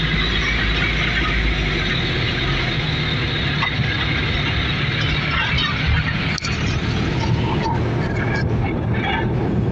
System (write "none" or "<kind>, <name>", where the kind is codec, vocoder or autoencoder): none